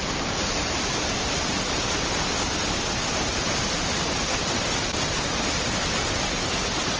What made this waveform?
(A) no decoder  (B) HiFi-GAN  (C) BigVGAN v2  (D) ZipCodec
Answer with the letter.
A